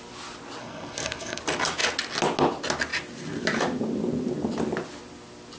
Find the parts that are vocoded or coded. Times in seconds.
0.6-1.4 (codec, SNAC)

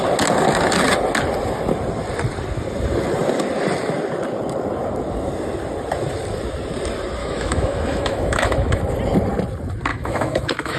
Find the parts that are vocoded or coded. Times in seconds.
7.2-8.8 (autoencoder, DAC-VAE); 9.9-10.8